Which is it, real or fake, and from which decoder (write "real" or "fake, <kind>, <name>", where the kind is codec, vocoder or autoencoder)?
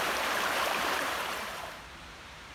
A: fake, vocoder, BigVGAN v2